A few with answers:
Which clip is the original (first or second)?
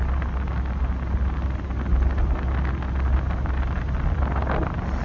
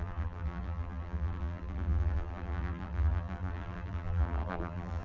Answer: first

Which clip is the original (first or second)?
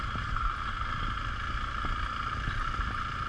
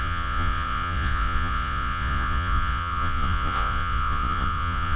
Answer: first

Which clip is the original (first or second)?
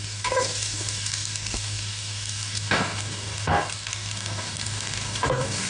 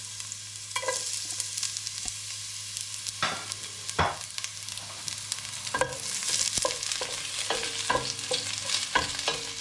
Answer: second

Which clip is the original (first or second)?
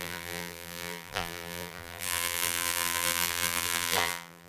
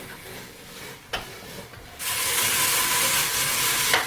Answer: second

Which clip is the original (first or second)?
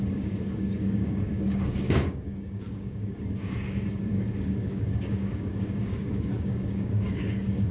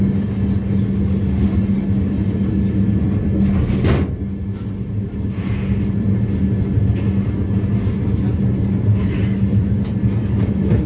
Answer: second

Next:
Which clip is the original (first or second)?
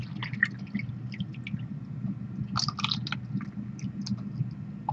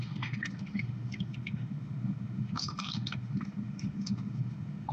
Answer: first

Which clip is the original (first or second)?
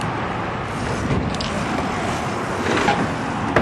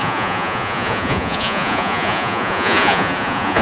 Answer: first